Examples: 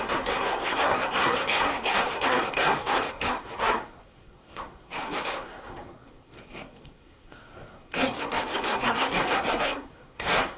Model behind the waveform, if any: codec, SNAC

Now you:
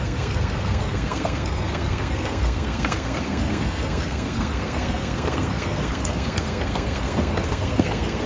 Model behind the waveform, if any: codec, SNAC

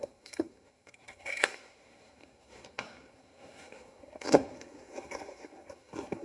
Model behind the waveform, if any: codec, SNAC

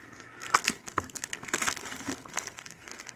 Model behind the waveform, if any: codec, SNAC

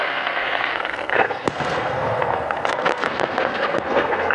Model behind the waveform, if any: codec, SNAC